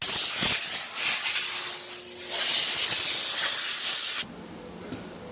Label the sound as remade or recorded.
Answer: recorded